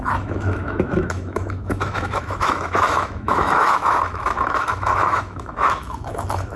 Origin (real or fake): fake